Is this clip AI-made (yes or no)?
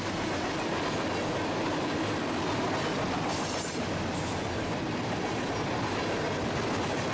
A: no